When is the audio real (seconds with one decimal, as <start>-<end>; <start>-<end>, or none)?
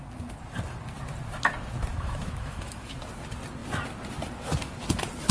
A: 0.0-1.9; 2.9-5.3